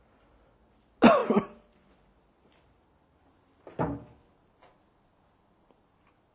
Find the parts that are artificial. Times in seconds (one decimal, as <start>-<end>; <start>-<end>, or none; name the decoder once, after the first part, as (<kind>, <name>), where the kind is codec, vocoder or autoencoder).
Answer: none